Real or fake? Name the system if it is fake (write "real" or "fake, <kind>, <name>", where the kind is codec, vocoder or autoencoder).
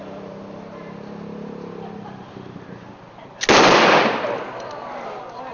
real